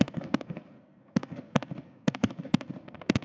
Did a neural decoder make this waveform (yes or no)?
yes